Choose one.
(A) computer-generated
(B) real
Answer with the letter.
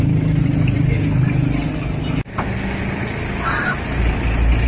B